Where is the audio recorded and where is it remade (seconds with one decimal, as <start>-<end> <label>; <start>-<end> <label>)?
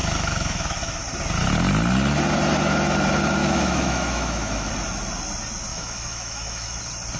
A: 0.0-1.0 remade; 1.0-3.4 recorded; 3.4-4.7 remade; 4.7-5.7 recorded; 5.7-6.8 remade; 6.8-7.2 recorded